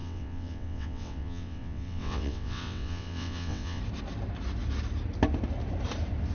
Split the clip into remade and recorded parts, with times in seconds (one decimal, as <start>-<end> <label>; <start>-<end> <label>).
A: 0.0-3.8 remade; 3.8-6.3 recorded